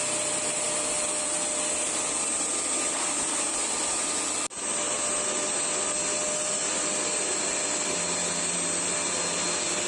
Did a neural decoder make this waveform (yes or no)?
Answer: no